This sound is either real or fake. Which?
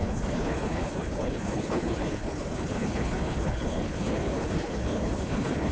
fake